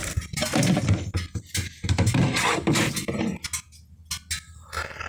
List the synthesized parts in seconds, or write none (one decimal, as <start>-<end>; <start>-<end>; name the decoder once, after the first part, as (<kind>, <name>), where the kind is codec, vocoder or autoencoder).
0.0-3.1 (vocoder, BigVGAN v2)